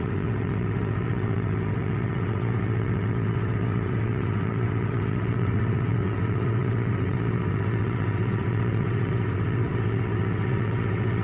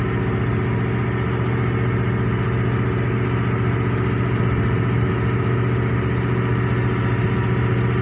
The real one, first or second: second